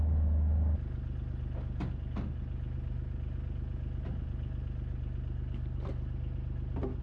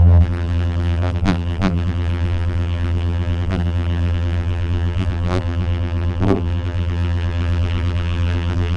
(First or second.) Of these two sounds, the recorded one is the first